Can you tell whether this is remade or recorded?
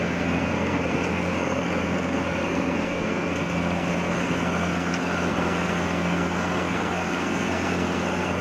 remade